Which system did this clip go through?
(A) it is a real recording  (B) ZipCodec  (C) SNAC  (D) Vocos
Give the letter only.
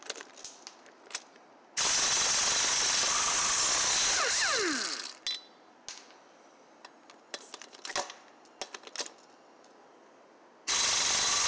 A